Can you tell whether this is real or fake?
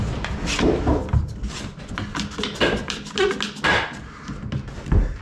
real